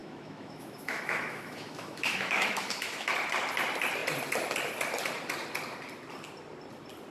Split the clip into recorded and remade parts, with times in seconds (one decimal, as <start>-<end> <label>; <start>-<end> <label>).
0.0-3.1 remade; 3.1-7.1 recorded